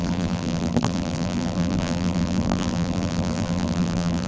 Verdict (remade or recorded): remade